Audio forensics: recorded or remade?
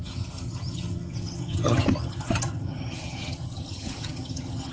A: remade